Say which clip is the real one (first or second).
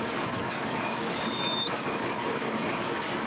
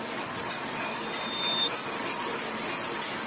second